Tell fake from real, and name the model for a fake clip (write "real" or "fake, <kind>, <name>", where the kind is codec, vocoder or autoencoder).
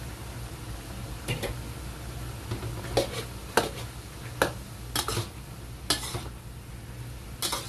real